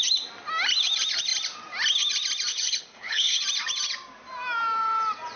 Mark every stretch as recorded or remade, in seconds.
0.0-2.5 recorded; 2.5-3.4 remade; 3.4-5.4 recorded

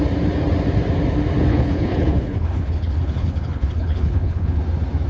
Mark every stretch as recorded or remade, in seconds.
0.0-1.5 recorded; 1.5-4.6 remade; 4.6-5.1 recorded

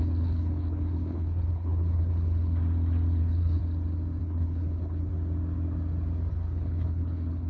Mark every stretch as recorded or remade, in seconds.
0.0-2.1 remade; 2.1-3.2 recorded; 3.2-3.6 remade; 3.6-4.2 recorded; 4.2-5.1 remade; 5.1-6.3 recorded; 6.3-7.5 remade

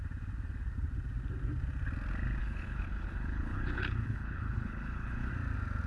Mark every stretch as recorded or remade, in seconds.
0.0-2.4 recorded; 2.4-5.3 remade; 5.3-5.9 recorded

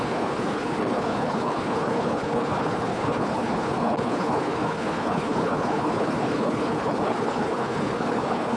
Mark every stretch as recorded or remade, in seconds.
0.0-8.6 remade

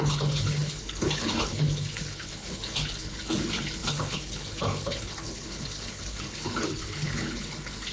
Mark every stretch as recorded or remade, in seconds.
0.0-7.9 remade

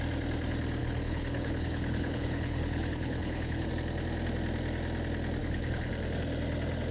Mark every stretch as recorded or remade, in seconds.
0.0-0.8 recorded; 0.8-3.7 remade; 3.7-5.4 recorded; 5.4-5.9 remade; 5.9-6.9 recorded